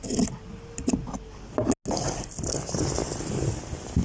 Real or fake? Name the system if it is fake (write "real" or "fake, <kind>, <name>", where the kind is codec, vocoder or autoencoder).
real